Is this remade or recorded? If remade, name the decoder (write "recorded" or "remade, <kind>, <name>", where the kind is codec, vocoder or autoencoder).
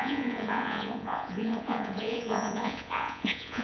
remade, vocoder, Vocos